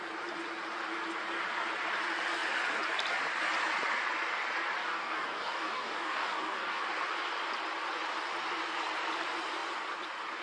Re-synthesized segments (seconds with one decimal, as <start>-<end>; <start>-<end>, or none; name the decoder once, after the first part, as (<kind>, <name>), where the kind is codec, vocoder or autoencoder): 4.8-6.8 (codec, DAC)